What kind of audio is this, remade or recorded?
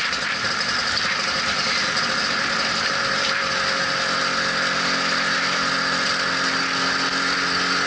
recorded